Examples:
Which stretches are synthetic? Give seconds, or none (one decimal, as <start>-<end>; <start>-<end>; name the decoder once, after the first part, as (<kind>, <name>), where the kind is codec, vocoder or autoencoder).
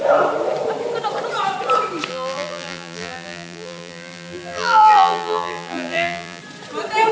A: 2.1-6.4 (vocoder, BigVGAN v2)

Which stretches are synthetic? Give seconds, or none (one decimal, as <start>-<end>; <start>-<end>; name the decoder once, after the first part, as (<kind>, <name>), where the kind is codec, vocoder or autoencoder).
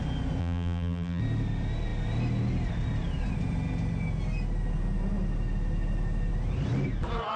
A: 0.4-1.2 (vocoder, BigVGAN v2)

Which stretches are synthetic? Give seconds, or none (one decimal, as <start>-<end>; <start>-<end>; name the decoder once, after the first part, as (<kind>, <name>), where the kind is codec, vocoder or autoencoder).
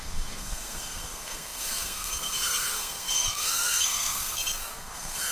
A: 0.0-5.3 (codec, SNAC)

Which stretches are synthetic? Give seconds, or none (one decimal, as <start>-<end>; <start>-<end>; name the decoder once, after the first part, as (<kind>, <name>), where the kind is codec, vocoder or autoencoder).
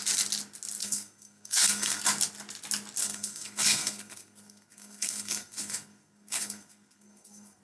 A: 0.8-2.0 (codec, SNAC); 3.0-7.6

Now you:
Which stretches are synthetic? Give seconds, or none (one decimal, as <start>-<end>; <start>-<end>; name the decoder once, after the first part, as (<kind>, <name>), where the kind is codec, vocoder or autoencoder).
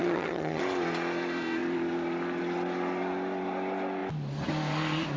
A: 0.0-0.6 (vocoder, HiFi-GAN)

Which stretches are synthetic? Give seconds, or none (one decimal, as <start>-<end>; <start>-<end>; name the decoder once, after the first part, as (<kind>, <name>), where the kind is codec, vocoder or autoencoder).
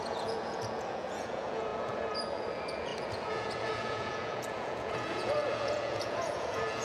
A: 0.0-6.8 (vocoder, Vocos)